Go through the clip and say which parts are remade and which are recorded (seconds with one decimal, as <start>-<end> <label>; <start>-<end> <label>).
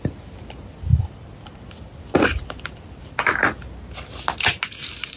0.0-0.9 recorded; 0.9-3.0 remade; 3.0-5.2 recorded